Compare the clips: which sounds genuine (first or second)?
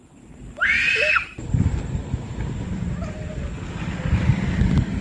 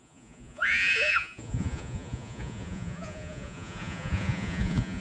first